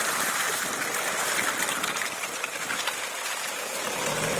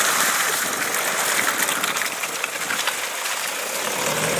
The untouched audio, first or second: second